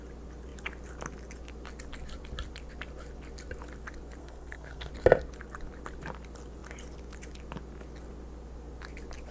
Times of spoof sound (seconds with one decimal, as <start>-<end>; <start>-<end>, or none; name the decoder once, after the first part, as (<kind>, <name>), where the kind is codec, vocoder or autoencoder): 4.2-4.9 (codec, SNAC)